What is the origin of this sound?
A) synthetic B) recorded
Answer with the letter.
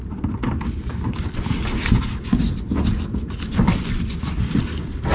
B